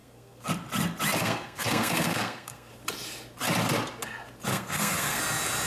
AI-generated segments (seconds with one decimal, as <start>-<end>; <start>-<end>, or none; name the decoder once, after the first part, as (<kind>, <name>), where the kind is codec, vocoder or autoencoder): 0.0-0.5 (codec, SNAC); 1.2-2.7; 4.5-5.2